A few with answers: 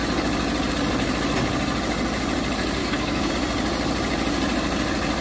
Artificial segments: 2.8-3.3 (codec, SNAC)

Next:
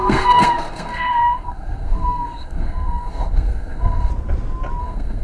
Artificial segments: 0.0-4.1 (codec, SNAC); 4.8-5.2